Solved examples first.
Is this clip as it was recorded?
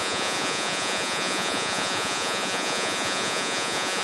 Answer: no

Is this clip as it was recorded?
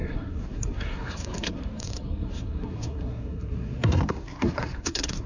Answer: no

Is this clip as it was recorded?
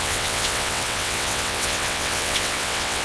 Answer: no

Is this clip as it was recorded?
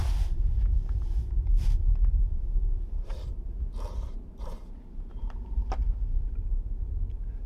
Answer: no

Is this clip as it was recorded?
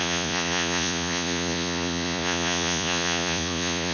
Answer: no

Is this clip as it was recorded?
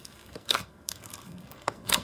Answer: no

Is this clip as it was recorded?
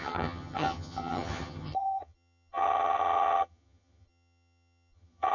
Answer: no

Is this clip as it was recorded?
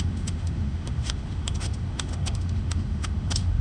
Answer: no